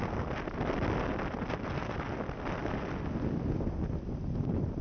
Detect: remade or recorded recorded